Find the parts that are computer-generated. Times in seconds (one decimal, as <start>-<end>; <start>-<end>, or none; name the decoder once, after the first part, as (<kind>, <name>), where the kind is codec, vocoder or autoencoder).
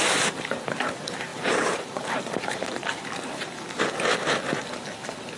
1.3-3.8 (vocoder, BigVGAN v2)